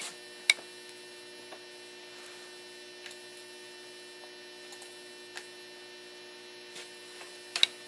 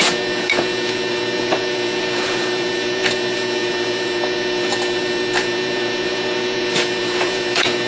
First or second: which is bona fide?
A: first